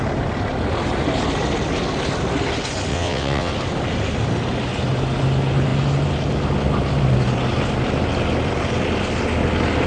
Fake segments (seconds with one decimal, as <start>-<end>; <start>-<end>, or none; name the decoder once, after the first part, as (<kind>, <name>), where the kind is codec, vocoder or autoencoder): 2.9-3.5 (vocoder, WaveNeXt)